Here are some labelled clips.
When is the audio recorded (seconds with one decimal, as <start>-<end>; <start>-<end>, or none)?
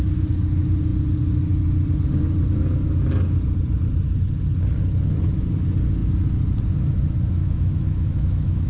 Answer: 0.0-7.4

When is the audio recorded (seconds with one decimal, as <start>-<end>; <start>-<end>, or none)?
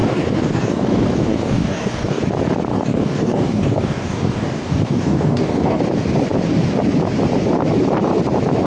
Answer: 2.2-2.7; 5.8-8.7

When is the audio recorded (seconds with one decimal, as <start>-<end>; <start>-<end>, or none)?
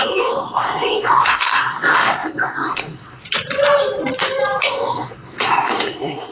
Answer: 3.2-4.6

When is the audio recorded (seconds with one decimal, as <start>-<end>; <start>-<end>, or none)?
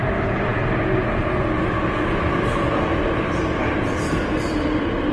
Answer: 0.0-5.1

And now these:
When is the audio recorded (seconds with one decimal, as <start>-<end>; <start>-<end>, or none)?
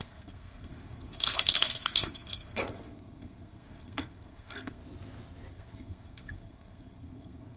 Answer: 4.8-5.5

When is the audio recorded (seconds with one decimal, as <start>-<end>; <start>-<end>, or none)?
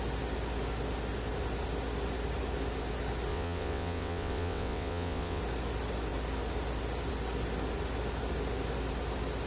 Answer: 0.0-3.3; 5.4-9.5